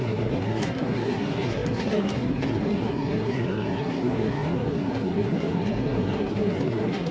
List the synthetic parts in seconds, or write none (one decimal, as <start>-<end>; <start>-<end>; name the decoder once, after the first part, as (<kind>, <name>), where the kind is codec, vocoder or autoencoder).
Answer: 0.0-7.1 (codec, SNAC)